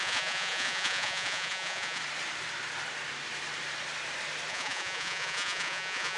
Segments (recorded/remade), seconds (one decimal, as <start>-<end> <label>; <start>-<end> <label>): 0.0-2.0 remade; 2.0-4.5 recorded; 4.5-6.2 remade